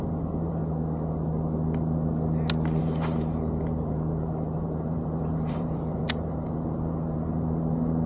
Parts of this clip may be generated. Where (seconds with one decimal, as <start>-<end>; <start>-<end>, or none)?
0.0-0.6; 2.8-8.1